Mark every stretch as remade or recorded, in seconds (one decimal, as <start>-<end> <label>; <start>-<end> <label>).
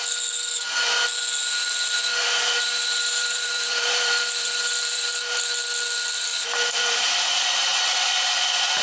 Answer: 0.0-2.1 recorded; 2.1-5.4 remade; 5.4-6.3 recorded; 6.3-7.1 remade; 7.1-8.8 recorded